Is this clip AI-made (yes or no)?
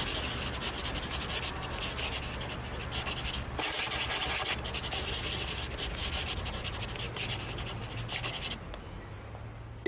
no